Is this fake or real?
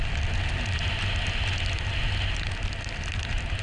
real